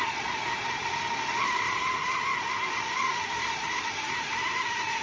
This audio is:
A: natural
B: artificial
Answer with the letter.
A